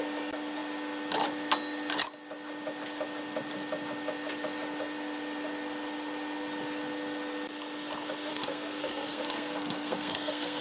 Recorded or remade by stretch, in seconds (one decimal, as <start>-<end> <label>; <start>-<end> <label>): 0.0-8.3 recorded; 8.3-10.6 remade